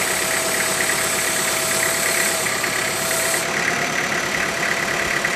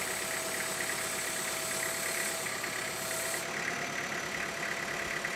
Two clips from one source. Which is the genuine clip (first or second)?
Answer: second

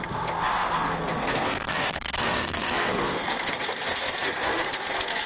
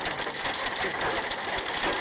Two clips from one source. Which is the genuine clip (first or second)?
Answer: second